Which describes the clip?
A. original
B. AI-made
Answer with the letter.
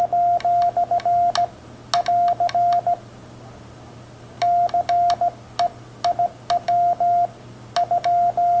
A